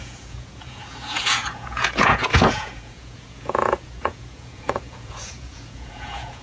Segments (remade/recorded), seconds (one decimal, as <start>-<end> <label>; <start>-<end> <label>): 0.0-6.4 remade